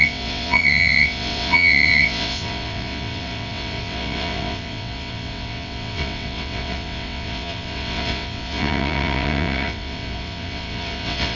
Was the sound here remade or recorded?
remade